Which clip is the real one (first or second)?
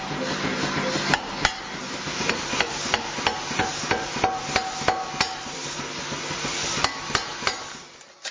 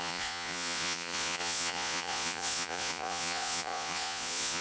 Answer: first